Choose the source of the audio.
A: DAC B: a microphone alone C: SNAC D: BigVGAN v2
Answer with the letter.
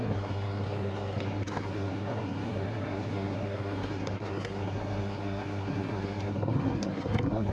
C